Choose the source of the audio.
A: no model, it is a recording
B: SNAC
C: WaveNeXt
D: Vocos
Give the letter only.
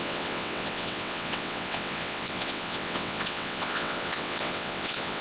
C